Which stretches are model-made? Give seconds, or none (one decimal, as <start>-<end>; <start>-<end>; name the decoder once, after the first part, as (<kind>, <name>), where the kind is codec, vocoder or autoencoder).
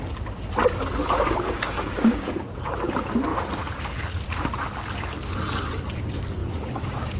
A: 1.0-2.9 (codec, DAC); 6.4-7.2